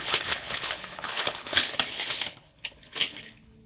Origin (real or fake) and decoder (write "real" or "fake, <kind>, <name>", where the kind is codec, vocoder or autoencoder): fake, codec, HILCodec